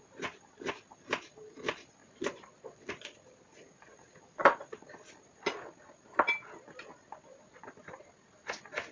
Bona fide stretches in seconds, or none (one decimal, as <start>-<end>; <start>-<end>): 0.0-2.0; 2.9-8.9